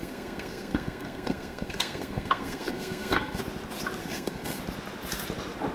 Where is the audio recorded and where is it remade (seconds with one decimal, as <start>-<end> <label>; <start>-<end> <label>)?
0.0-3.4 remade; 3.4-4.0 recorded; 4.0-4.6 remade; 4.6-5.7 recorded